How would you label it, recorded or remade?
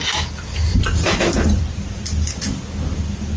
remade